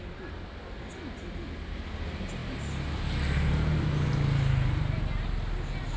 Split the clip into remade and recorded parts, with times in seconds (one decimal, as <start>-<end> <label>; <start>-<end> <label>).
0.0-6.0 recorded